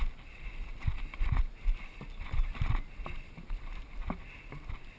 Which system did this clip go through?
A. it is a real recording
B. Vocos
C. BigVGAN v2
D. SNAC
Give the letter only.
A